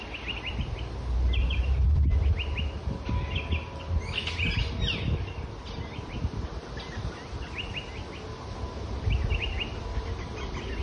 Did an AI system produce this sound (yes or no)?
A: no